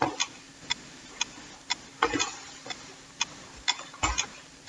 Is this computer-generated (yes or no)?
no